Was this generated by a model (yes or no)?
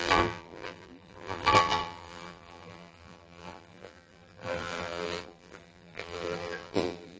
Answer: yes